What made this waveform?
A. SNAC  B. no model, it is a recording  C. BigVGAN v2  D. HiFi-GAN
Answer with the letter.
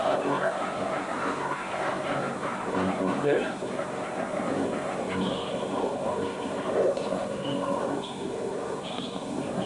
A